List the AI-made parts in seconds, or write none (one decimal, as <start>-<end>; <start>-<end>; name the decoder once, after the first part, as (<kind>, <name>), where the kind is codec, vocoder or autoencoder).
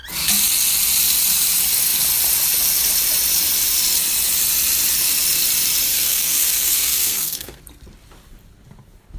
5.9-7.6 (codec, SNAC)